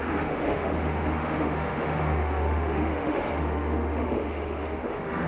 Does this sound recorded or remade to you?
remade